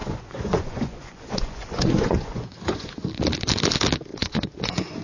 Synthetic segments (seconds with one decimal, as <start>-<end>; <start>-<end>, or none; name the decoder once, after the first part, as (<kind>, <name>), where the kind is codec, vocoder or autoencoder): 0.0-3.0 (vocoder, Vocos); 4.1-5.0